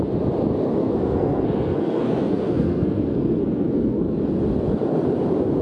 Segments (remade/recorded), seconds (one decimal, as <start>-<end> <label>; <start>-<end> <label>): 0.0-0.8 recorded; 0.8-4.2 remade; 4.2-5.6 recorded